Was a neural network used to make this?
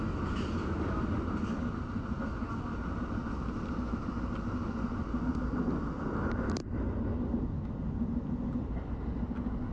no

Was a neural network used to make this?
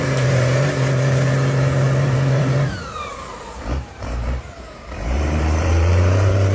yes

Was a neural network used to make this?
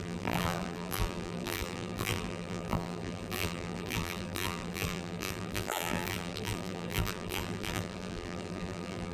yes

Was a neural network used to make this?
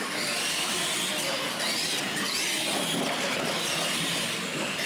no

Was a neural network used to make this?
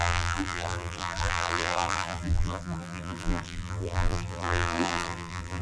yes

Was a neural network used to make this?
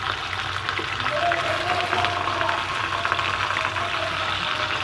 no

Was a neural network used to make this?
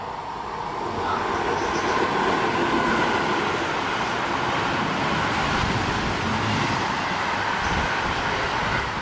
no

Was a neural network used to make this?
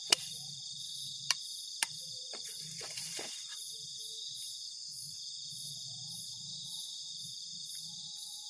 yes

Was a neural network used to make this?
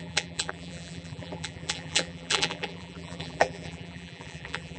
yes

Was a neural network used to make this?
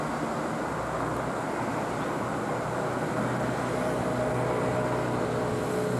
no